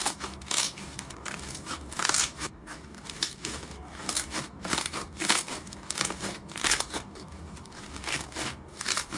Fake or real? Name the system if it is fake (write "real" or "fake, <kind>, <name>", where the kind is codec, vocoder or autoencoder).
fake, codec, DAC